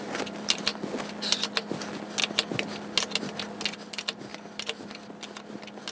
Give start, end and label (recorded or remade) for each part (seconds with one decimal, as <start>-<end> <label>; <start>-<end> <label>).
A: 0.0-5.9 recorded